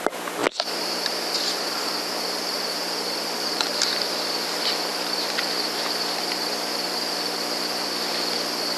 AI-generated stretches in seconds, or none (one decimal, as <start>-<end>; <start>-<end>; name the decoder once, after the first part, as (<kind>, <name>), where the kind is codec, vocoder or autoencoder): none

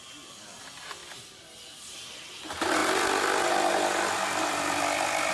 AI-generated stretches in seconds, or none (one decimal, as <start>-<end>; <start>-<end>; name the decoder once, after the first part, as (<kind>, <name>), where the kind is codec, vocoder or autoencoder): none

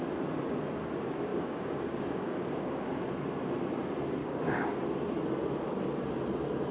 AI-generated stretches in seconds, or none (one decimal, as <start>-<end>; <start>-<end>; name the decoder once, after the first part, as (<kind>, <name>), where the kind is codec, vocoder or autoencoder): 1.3-3.0 (codec, DAC); 4.2-4.8

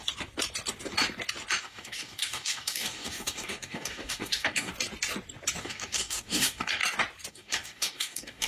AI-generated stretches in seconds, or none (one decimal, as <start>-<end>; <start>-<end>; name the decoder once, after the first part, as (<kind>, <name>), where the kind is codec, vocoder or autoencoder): 1.6-4.7 (codec, DAC); 5.6-6.8; 7.3-8.5

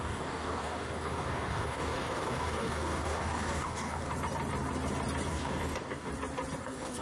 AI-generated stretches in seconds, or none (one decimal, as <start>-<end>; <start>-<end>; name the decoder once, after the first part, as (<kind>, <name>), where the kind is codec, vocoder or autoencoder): 0.0-4.1 (codec, DAC); 5.3-6.1; 6.6-7.0

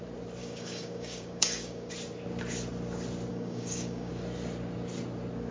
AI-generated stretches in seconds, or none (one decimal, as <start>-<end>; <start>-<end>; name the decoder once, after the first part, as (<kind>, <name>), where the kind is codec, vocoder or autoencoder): 0.4-1.9 (codec, DAC); 3.3-4.1